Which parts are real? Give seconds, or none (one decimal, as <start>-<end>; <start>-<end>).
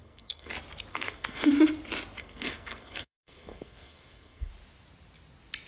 0.5-0.9; 1.5-2.2; 4.5-5.7